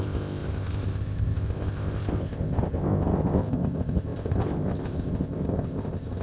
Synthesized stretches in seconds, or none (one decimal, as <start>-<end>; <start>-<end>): 0.0-6.2